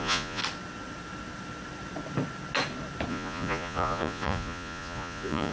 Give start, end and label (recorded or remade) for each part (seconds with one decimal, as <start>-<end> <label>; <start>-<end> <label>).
0.0-0.4 remade; 0.4-3.1 recorded; 3.1-5.5 remade